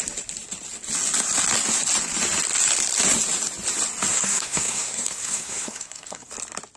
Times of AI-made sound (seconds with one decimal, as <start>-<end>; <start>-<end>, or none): 4.1-6.3